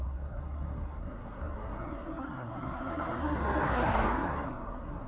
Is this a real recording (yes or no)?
no